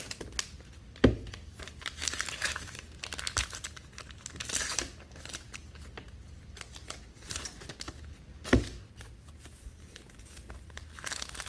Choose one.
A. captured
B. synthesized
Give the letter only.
A